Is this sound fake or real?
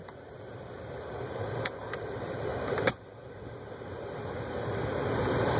fake